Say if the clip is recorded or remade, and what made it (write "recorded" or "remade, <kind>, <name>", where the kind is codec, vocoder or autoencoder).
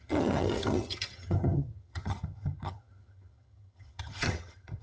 remade, vocoder, HiFi-GAN